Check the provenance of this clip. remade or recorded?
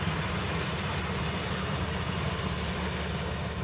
recorded